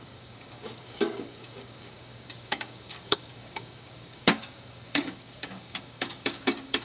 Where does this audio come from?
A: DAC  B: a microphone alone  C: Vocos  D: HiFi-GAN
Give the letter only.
A